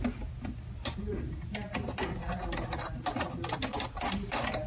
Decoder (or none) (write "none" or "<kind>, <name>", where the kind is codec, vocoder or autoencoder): none